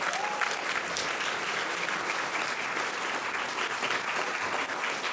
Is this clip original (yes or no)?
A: yes